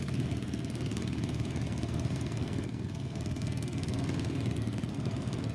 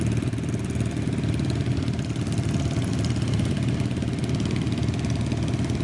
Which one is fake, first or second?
first